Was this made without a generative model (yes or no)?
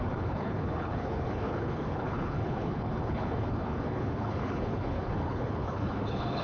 no